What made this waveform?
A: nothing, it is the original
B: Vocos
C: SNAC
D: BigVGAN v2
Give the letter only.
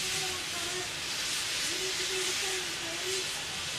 A